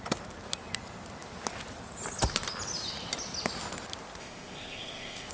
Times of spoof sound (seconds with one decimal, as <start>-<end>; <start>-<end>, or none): 4.2-5.3